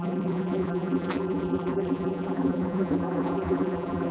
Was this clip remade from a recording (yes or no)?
yes